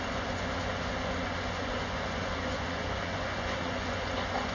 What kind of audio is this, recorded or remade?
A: remade